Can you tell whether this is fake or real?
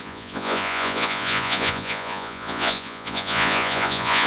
fake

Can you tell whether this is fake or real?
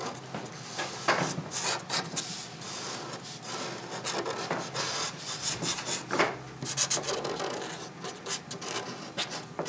real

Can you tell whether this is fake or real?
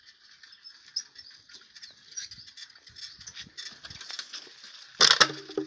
real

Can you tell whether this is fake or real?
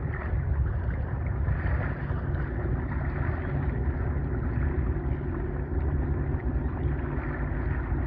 real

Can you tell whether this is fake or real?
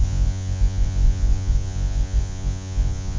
fake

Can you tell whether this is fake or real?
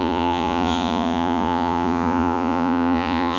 fake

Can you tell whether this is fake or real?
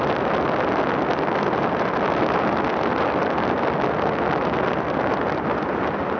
real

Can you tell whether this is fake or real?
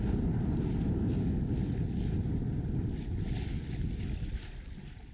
real